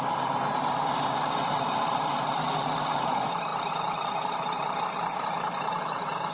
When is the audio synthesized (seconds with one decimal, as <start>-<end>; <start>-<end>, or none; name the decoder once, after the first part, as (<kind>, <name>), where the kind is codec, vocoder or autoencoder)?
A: 0.0-6.3 (vocoder, BigVGAN v2)